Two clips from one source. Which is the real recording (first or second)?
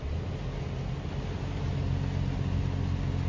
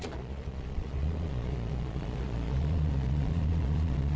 first